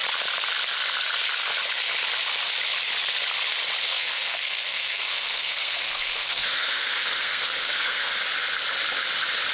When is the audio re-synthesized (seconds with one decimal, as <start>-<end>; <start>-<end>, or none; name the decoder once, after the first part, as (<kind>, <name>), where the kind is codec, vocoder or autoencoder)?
3.9-8.2 (codec, SNAC)